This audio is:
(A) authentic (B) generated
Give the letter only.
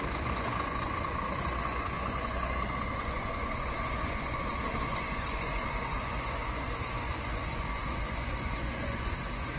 B